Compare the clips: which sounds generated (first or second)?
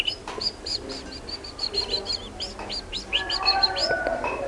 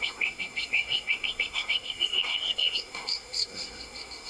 second